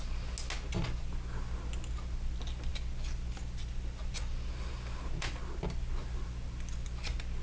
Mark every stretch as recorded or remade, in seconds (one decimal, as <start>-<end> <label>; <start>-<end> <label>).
0.0-7.4 recorded